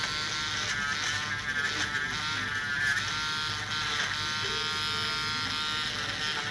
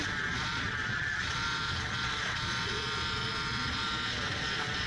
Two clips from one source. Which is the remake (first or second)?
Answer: second